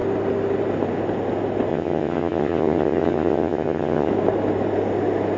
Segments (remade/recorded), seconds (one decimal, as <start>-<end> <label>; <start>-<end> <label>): 0.0-1.7 recorded; 1.7-4.1 remade; 4.1-5.4 recorded